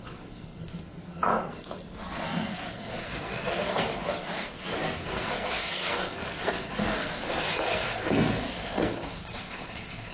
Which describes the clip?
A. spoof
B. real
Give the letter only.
A